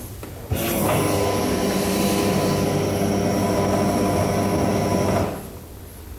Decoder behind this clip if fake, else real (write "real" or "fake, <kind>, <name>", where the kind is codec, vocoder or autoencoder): real